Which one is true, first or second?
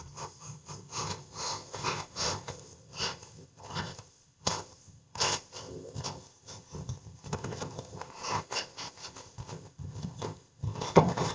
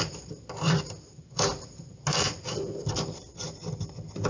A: second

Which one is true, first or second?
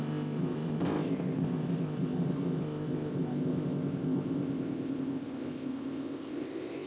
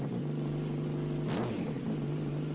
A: second